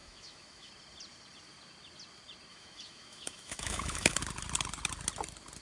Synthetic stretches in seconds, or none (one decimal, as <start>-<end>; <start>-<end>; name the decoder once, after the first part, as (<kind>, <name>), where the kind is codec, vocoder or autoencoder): 0.0-0.7 (autoencoder, DAC-VAE); 2.5-4.2